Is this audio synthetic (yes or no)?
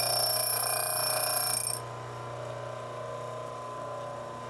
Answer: no